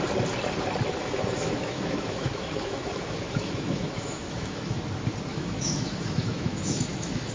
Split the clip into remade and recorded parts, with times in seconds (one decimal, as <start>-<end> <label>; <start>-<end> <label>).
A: 0.0-1.0 recorded; 1.0-4.8 remade; 4.8-5.3 recorded; 5.3-7.3 remade